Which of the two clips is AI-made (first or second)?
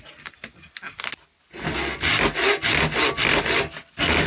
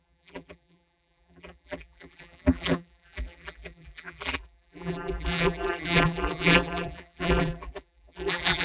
second